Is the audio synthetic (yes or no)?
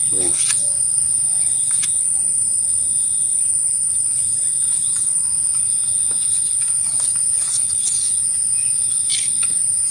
no